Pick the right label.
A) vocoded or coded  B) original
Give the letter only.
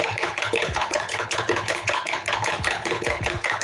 A